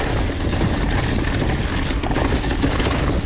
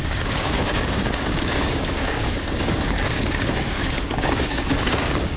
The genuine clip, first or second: first